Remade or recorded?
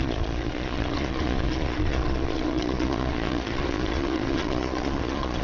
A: remade